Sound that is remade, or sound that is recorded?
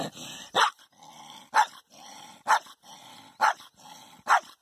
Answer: recorded